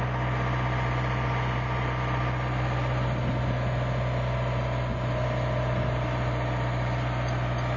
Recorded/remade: recorded